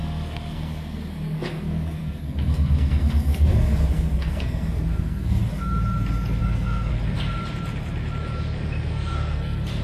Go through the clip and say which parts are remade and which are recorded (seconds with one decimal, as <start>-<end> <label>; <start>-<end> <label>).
0.0-5.4 remade; 5.4-6.4 recorded; 6.4-6.9 remade; 6.9-8.9 recorded; 8.9-9.8 remade